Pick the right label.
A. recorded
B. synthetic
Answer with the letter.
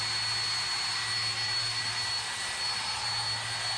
A